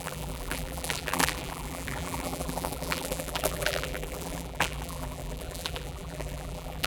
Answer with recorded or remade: remade